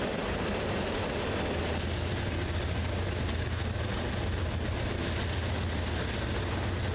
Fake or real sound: real